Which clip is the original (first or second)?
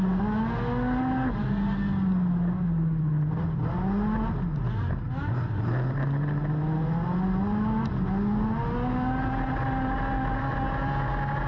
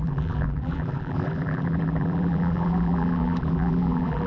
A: first